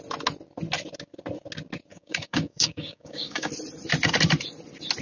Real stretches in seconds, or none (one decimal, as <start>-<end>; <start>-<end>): 0.0-1.9; 3.5-5.0